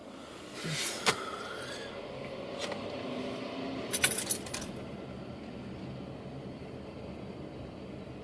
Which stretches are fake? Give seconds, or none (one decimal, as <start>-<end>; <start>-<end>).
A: none